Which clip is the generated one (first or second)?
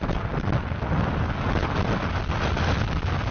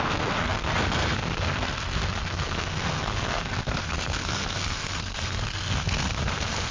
second